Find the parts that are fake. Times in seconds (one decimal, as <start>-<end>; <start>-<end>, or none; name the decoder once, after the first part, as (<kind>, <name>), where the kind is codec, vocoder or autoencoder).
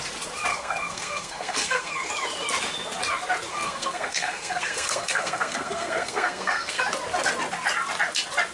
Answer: 0.5-2.1 (codec, SNAC); 3.5-6.8